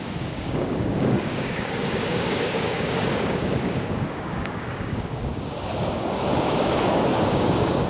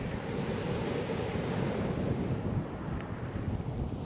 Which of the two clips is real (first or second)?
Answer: second